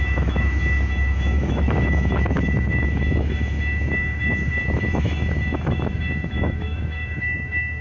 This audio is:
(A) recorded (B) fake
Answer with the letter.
B